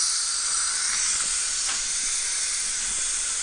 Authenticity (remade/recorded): recorded